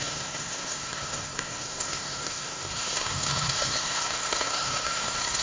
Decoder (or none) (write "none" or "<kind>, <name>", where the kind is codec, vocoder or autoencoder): codec, SNAC